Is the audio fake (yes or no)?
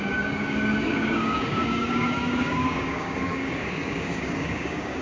yes